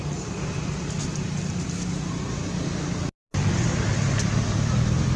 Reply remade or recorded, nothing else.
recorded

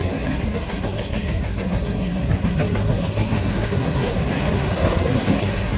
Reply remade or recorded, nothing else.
remade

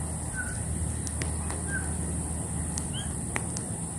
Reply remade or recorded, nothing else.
recorded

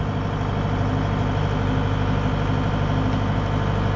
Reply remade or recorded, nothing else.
recorded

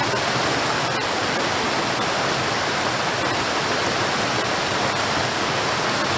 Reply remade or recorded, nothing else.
recorded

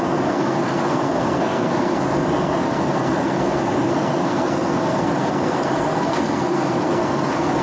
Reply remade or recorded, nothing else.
remade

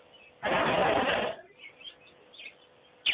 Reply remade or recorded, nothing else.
recorded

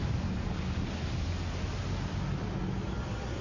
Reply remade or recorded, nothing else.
recorded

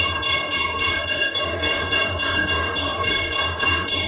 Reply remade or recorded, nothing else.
remade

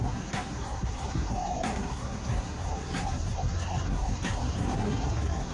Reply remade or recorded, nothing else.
remade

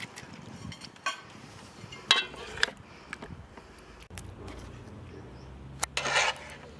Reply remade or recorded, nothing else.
recorded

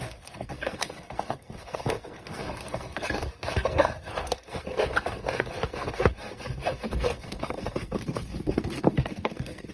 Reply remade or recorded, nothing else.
remade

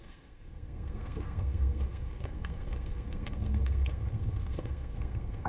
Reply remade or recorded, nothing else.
remade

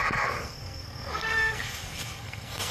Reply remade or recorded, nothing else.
remade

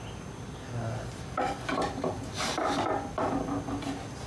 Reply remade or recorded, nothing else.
recorded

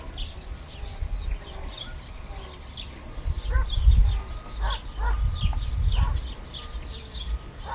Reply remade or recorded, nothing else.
recorded